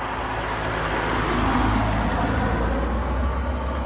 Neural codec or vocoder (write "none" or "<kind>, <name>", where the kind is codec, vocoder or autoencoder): none